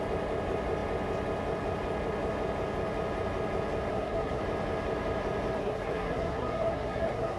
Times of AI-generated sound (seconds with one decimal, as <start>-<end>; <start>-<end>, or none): 3.9-4.4; 5.6-7.4